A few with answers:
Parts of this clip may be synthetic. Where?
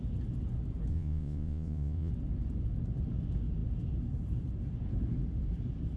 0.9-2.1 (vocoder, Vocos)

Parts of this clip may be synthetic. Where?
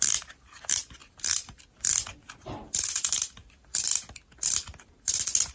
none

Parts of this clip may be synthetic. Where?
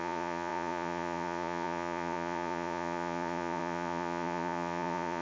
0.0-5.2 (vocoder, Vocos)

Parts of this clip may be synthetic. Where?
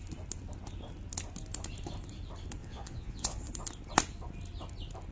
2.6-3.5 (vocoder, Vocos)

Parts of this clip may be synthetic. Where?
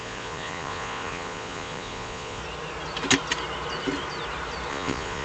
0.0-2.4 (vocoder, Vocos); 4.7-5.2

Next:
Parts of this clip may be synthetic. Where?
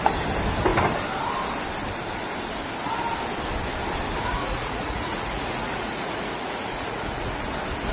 4.3-7.5 (vocoder, Vocos)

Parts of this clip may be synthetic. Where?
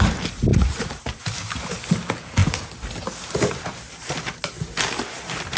0.5-1.0 (vocoder, Vocos)